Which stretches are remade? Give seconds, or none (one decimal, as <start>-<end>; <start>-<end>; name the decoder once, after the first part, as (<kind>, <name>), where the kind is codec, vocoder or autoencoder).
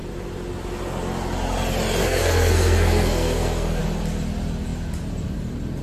2.0-3.8 (codec, SNAC)